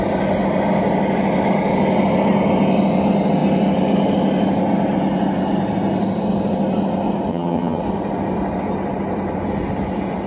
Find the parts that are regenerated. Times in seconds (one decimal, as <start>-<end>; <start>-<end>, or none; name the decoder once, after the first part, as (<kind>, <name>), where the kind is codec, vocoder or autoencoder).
7.3-7.8 (vocoder, HiFi-GAN)